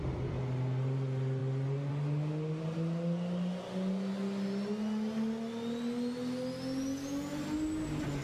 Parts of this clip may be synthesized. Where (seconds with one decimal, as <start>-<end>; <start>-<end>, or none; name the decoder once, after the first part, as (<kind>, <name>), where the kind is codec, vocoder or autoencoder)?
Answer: none